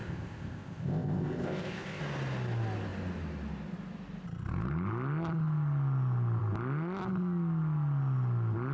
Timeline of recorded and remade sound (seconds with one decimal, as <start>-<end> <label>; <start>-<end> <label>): 0.0-2.0 remade; 2.0-8.7 recorded